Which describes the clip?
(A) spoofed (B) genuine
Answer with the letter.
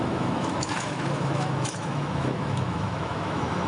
A